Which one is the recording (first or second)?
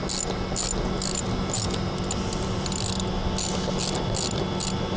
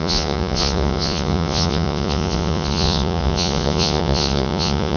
first